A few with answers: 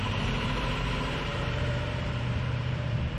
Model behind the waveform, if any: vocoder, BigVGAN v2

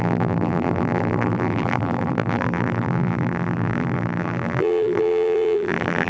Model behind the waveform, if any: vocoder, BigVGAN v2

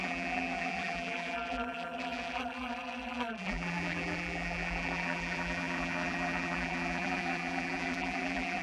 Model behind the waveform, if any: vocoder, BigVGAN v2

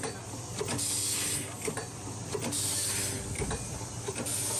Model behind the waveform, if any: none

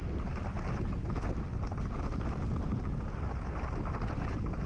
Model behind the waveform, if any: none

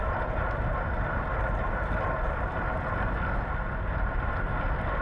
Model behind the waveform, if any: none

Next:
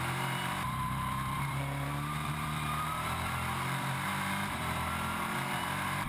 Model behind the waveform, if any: vocoder, BigVGAN v2